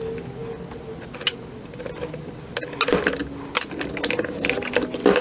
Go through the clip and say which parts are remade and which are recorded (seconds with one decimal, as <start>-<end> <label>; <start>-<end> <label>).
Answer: 0.0-5.2 recorded